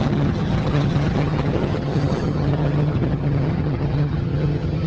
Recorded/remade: remade